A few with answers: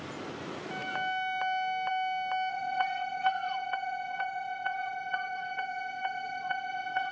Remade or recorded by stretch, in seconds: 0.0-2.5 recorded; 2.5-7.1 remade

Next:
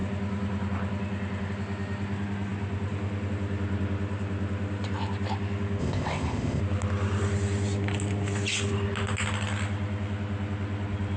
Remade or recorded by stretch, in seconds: 0.0-5.8 recorded; 5.8-6.6 remade; 6.6-11.2 recorded